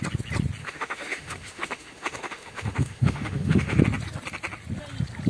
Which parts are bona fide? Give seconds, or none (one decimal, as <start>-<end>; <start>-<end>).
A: 0.0-0.6; 3.8-5.3